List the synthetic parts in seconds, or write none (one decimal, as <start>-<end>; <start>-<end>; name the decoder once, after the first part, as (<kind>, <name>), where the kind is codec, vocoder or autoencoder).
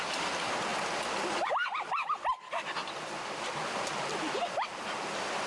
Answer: none